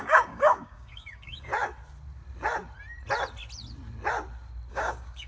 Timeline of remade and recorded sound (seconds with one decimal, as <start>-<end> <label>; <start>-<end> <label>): 0.0-1.5 remade; 1.5-4.7 recorded; 4.7-5.3 remade

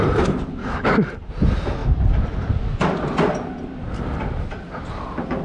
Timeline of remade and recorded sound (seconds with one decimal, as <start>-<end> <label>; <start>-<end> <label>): 0.0-0.6 recorded; 0.6-1.3 remade; 1.3-5.4 recorded

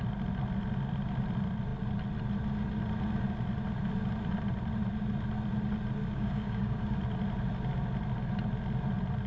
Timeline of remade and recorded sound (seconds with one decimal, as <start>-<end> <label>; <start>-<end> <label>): 0.0-6.0 recorded; 6.0-7.0 remade; 7.0-9.3 recorded

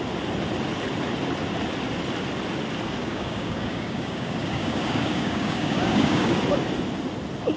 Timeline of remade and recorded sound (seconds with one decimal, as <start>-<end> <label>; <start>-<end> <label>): 0.0-3.0 recorded; 3.0-6.4 remade; 6.4-7.6 recorded

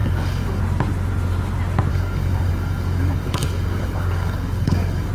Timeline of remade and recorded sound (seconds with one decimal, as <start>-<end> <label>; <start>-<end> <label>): 0.0-0.6 remade; 0.6-1.9 recorded; 1.9-5.1 remade